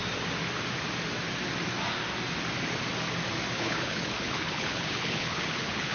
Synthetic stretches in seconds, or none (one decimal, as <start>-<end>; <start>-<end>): 3.5-5.9